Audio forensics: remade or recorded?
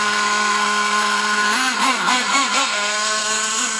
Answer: remade